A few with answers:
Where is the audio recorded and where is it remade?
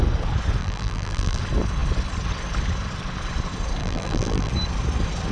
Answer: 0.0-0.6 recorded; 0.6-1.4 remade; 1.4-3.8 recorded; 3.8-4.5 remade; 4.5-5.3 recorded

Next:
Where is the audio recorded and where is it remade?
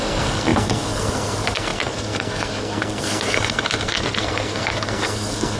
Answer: 0.0-5.6 remade